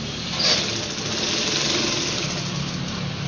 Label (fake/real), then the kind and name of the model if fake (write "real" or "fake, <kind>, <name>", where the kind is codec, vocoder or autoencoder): real